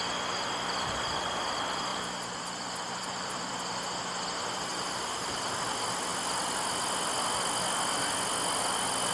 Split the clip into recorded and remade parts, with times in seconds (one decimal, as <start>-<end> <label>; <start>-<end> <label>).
0.0-1.9 recorded; 1.9-3.5 remade; 3.5-4.7 recorded; 4.7-5.4 remade; 5.4-9.1 recorded